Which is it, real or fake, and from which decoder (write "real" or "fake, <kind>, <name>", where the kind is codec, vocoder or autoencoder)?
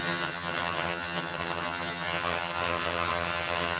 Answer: fake, vocoder, HiFi-GAN